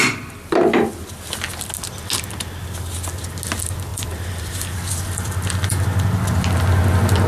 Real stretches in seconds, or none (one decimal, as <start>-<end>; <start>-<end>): 1.7-3.9; 5.8-7.3